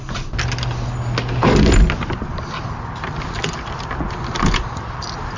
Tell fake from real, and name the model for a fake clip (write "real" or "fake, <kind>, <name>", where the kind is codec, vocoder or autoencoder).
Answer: real